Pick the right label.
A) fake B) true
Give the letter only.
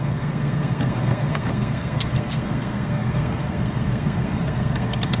A